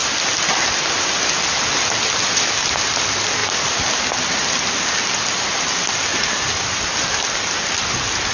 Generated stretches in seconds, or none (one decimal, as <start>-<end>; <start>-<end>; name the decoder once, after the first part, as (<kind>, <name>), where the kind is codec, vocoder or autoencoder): 6.1-6.8 (vocoder, BigVGAN v2)